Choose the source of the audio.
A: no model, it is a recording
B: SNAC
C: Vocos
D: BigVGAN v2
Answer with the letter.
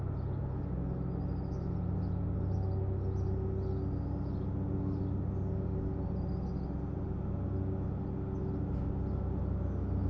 A